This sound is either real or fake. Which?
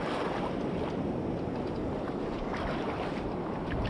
real